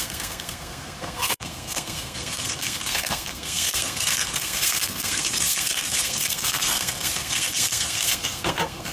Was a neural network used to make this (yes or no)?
yes